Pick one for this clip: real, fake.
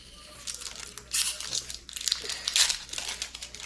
real